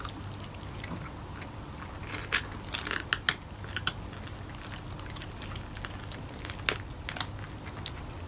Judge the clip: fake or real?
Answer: real